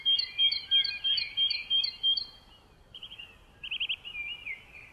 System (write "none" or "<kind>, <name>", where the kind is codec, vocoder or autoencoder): none